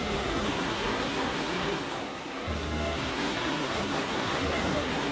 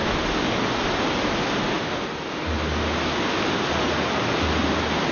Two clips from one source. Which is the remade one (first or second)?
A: first